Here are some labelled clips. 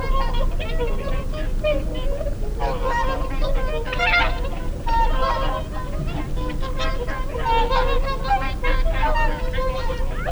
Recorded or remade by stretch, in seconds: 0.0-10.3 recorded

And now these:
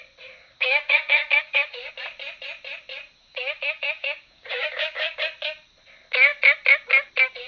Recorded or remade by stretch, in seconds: 0.0-0.4 recorded; 0.4-1.9 remade; 1.9-3.3 recorded; 3.3-5.2 remade; 5.2-7.5 recorded

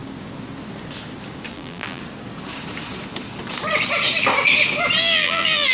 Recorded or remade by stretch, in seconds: 0.0-1.5 recorded; 1.5-2.0 remade; 2.0-5.0 recorded; 5.0-5.7 remade

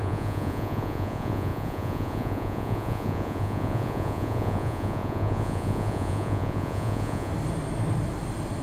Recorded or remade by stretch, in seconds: 0.0-7.3 remade; 7.3-8.6 recorded

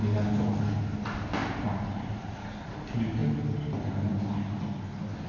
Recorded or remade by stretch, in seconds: 0.0-5.3 recorded

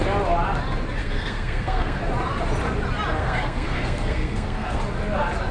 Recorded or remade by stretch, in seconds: 0.0-1.0 recorded; 1.0-2.0 remade; 2.0-3.2 recorded; 3.2-4.8 remade; 4.8-5.5 recorded